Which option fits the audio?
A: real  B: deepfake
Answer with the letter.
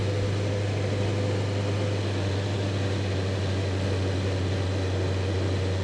A